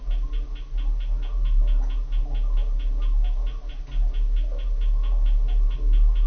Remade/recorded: recorded